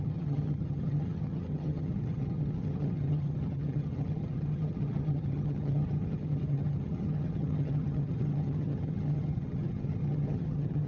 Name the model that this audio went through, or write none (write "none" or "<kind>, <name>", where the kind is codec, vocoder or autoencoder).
vocoder, HiFi-GAN